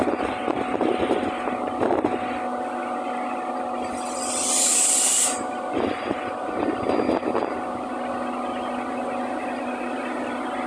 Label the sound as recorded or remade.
recorded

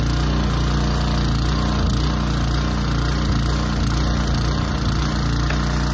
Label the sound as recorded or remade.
recorded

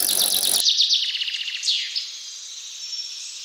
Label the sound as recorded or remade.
recorded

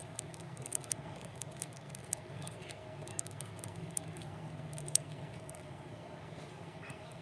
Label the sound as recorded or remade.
remade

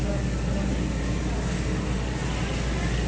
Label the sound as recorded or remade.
recorded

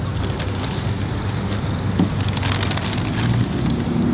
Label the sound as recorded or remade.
recorded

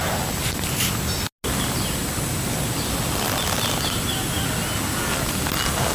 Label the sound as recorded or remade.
recorded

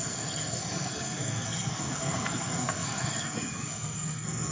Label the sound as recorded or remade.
remade